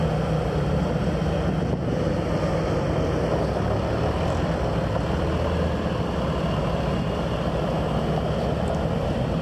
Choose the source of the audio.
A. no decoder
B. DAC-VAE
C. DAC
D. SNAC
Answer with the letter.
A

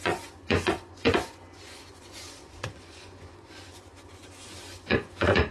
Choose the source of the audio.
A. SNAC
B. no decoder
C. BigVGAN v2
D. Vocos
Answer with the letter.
D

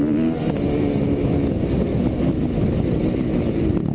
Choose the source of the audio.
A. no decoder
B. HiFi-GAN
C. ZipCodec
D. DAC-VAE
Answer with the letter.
A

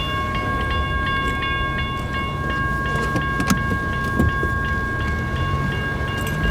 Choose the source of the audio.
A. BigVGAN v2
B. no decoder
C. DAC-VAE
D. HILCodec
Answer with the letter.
B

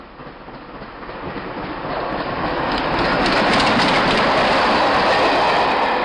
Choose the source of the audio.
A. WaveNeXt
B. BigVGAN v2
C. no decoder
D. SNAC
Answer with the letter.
C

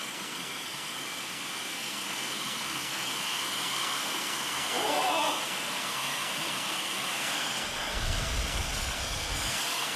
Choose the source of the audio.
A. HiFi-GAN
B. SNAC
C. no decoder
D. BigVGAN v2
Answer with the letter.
B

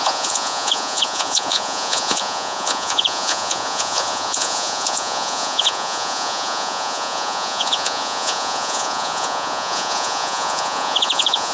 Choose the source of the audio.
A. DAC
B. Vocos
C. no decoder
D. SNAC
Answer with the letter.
B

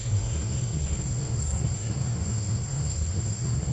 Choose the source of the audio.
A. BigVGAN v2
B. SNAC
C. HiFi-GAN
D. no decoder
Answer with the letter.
B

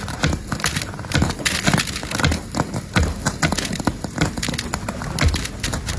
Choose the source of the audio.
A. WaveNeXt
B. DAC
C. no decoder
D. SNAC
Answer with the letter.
C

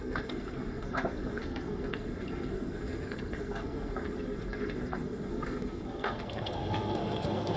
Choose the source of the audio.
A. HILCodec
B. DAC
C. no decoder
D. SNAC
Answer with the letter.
D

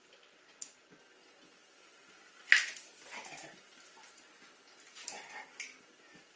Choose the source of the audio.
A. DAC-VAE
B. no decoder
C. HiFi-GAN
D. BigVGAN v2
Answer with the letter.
B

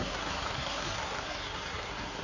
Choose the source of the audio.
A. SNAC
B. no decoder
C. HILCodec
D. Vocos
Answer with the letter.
A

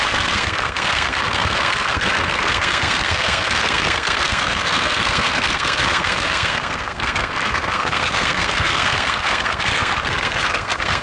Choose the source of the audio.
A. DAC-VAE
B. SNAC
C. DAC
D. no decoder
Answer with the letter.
B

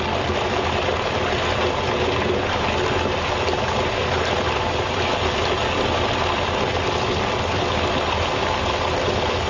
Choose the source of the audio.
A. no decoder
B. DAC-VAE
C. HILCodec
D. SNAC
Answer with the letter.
A